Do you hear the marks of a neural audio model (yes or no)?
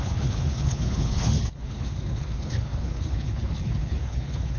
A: yes